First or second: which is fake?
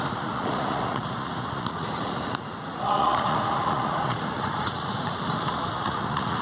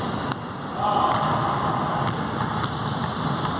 first